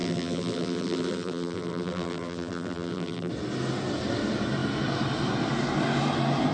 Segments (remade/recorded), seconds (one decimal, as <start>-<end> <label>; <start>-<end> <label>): 0.0-3.3 remade; 3.3-6.5 recorded

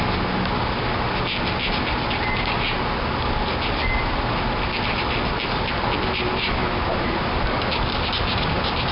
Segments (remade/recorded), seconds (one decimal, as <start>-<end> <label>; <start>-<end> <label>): 0.0-8.9 recorded

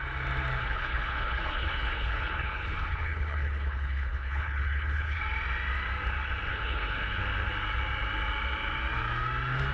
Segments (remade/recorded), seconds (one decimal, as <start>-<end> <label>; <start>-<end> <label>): 0.0-0.6 recorded; 0.6-5.2 remade; 5.2-6.5 recorded; 6.5-7.2 remade; 7.2-9.7 recorded

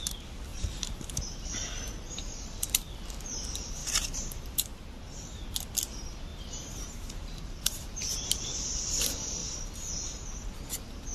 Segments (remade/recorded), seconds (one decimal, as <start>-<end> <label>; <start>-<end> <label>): 0.0-0.5 recorded; 0.5-1.1 remade; 1.1-3.8 recorded; 3.8-5.4 remade; 5.4-6.3 recorded; 6.3-8.1 remade; 8.1-11.1 recorded

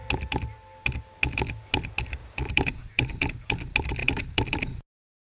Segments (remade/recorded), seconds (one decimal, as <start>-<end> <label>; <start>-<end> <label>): 0.0-2.2 recorded; 2.2-3.3 remade; 3.3-4.0 recorded; 4.0-4.8 remade; 4.8-5.3 recorded

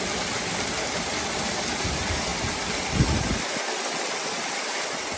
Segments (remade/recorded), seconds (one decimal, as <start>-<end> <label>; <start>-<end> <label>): 0.0-5.2 recorded